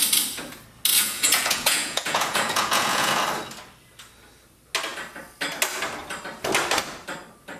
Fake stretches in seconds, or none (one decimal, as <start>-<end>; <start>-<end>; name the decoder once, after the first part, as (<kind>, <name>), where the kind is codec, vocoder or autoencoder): 0.9-3.2 (vocoder, Vocos)